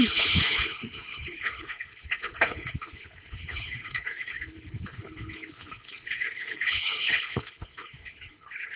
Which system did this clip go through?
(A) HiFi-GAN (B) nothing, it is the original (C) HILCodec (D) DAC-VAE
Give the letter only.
C